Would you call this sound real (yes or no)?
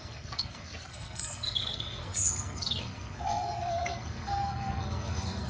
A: no